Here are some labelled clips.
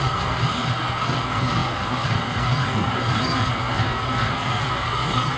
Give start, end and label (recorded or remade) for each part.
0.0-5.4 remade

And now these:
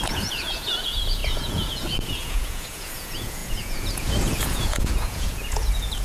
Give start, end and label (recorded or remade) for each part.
0.0-6.0 remade

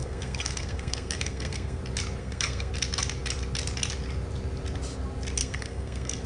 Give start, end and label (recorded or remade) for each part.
0.0-1.8 remade; 1.8-2.2 recorded; 2.2-2.7 remade; 2.7-5.4 recorded; 5.4-6.3 remade